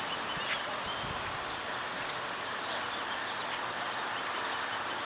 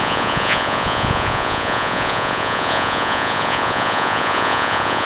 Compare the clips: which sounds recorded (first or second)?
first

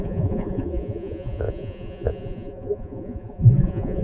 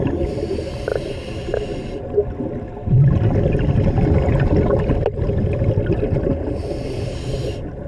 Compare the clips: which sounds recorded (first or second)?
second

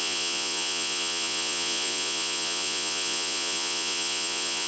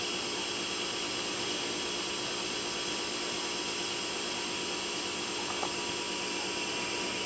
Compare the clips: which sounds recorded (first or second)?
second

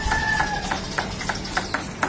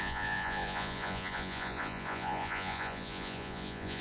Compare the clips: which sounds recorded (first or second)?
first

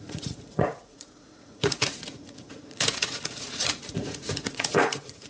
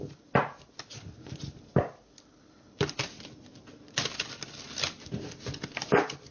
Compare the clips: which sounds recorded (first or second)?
second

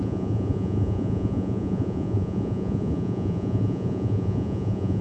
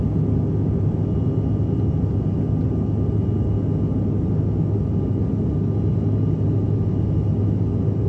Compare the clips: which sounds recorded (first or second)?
second